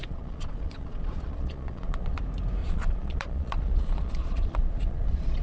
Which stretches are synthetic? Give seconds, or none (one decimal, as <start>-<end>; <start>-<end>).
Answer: 0.0-2.2; 2.6-5.4